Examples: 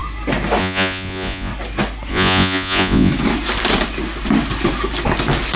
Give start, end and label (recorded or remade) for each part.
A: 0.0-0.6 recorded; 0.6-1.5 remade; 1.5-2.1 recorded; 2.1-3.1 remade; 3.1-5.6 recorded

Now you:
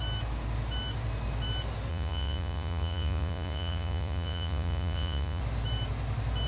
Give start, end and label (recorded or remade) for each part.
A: 0.0-1.9 recorded; 1.9-5.4 remade; 5.4-6.5 recorded